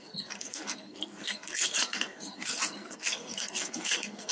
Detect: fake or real fake